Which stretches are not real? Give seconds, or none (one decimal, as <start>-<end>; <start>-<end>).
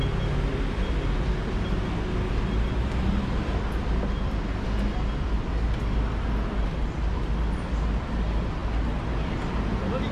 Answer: none